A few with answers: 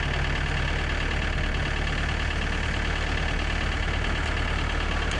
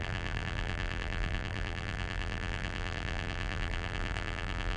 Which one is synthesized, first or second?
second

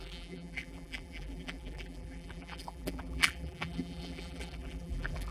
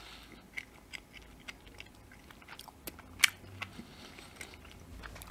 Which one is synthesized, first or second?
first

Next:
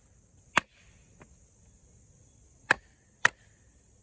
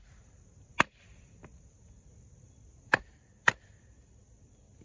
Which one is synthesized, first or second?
second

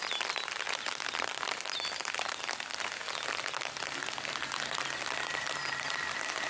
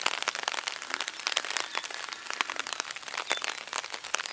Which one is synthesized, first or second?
first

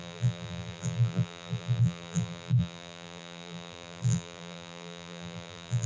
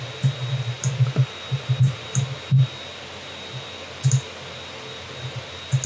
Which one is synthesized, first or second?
first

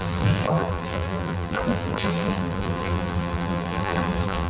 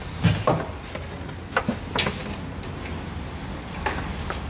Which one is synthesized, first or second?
first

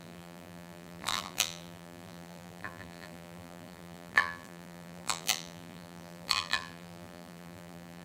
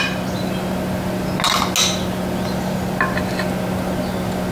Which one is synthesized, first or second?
first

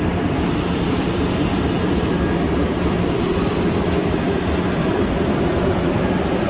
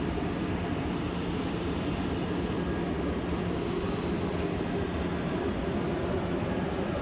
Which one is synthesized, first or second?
first